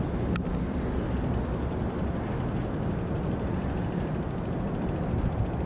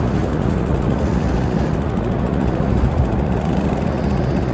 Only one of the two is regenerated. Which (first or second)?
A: second